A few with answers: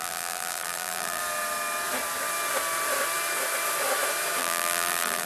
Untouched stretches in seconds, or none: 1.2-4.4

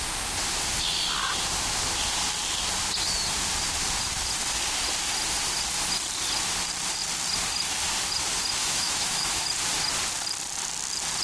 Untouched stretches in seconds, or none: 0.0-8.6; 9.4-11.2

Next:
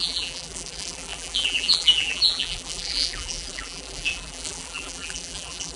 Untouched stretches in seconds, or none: none

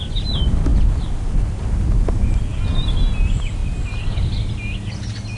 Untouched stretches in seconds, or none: 0.0-5.4

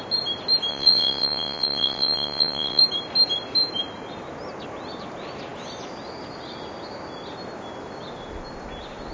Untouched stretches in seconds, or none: 0.0-0.7; 2.8-9.1

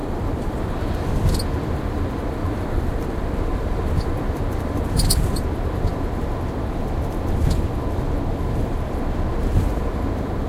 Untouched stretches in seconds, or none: 1.1-2.4; 5.4-10.5